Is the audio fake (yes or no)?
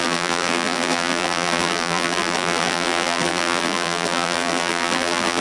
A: yes